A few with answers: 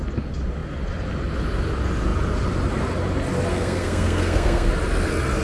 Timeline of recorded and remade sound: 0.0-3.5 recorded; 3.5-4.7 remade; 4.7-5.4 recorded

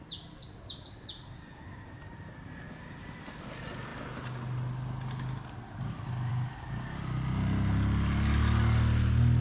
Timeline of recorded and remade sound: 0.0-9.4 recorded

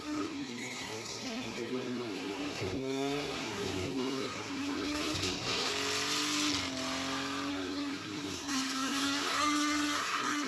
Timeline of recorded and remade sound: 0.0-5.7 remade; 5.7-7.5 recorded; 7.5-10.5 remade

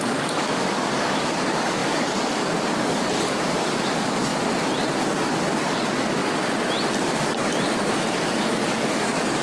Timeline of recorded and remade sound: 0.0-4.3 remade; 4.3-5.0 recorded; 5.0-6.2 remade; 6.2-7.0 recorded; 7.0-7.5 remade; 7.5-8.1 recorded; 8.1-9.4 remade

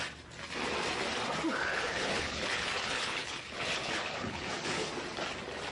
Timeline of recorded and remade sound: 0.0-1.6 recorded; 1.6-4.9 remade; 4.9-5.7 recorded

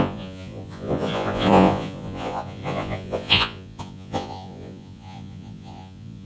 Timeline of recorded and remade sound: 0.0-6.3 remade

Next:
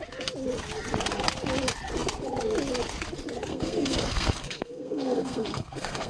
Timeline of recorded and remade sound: 0.0-3.5 recorded; 3.5-6.1 remade

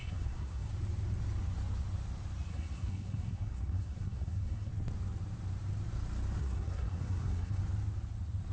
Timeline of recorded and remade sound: 0.0-0.7 remade; 0.7-2.5 recorded; 2.5-4.7 remade; 4.7-6.4 recorded; 6.4-7.6 remade; 7.6-8.5 recorded